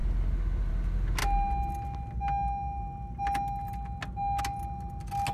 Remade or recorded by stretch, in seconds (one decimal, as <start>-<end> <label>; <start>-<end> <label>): 0.0-5.3 recorded